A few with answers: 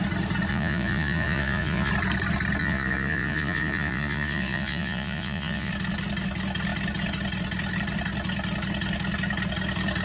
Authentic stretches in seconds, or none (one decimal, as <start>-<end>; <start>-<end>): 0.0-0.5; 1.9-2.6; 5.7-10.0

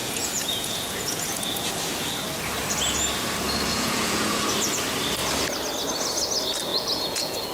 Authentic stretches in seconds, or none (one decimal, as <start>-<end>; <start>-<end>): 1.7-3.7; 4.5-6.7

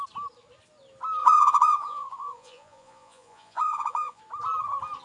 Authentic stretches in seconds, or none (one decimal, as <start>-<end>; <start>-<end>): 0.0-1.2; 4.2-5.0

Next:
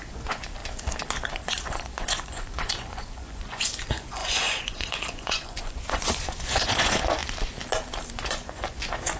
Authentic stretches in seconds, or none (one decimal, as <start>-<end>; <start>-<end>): 0.6-1.3; 7.2-8.1

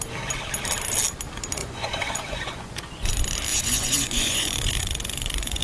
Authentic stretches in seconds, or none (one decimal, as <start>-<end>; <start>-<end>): 0.0-1.6; 3.1-3.5